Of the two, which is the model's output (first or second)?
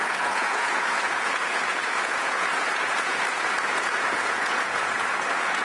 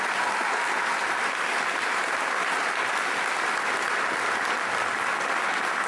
first